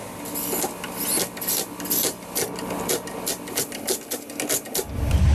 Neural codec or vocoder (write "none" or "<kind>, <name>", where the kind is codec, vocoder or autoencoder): none